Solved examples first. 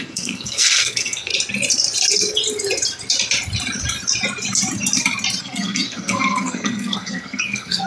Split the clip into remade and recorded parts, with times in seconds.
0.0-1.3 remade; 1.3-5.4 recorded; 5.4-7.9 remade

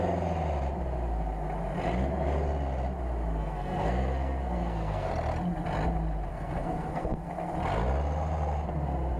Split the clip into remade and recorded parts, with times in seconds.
0.0-3.4 recorded; 3.4-5.1 remade; 5.1-6.3 recorded; 6.3-7.3 remade; 7.3-9.2 recorded

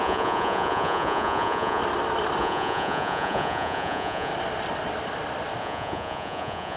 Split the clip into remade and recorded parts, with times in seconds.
0.0-1.8 remade; 1.8-2.4 recorded; 2.4-4.3 remade; 4.3-5.6 recorded; 5.6-6.8 remade

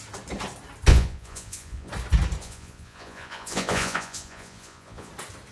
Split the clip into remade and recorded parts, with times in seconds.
0.0-0.9 recorded; 0.9-1.9 remade; 1.9-2.4 recorded; 2.4-5.1 remade; 5.1-5.5 recorded

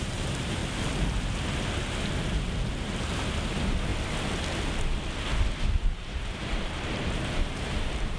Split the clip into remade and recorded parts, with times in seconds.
0.0-0.6 remade; 0.6-3.5 recorded; 3.5-3.9 remade; 3.9-6.4 recorded; 6.4-8.2 remade

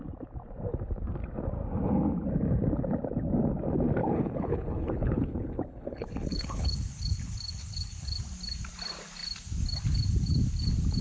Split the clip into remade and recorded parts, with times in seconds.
0.0-4.0 recorded; 4.0-8.2 remade; 8.2-11.0 recorded

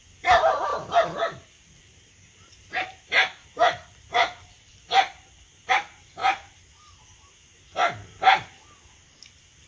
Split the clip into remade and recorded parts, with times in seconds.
0.0-0.7 recorded; 0.7-5.7 remade; 5.7-9.7 recorded